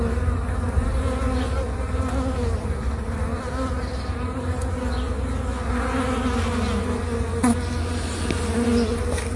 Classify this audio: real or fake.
real